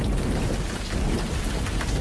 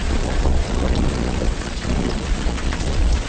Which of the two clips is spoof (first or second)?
second